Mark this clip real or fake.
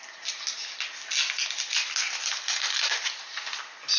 real